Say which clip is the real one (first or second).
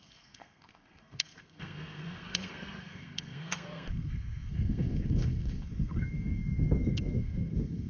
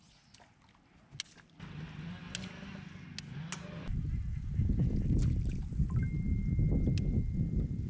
second